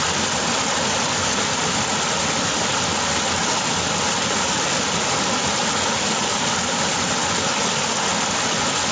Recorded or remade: recorded